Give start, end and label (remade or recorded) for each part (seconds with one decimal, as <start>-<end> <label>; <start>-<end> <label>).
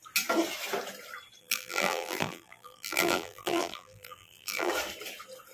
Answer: 0.0-1.4 recorded; 1.4-4.7 remade; 4.7-5.5 recorded